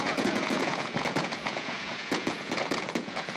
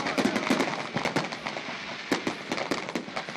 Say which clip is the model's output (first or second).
first